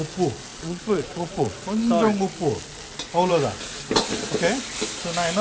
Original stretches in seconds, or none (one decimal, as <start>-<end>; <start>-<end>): 0.0-0.5; 1.9-5.4